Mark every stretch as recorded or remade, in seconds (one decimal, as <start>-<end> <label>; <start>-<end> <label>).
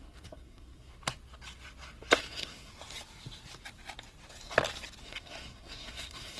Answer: 0.0-0.9 remade; 0.9-2.2 recorded; 2.2-2.7 remade; 2.7-5.0 recorded; 5.0-6.4 remade